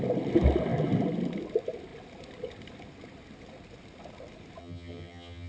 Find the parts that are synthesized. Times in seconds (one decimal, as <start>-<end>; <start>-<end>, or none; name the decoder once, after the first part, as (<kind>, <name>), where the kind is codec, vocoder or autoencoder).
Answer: 4.6-5.5 (vocoder, HiFi-GAN)